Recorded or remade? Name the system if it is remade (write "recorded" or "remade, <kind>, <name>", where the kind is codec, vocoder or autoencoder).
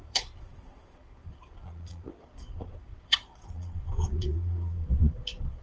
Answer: remade, vocoder, Vocos